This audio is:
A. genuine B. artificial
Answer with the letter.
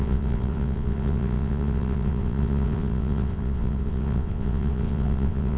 B